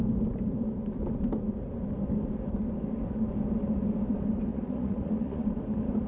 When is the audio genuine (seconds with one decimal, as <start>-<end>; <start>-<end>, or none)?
0.0-4.5; 5.5-6.1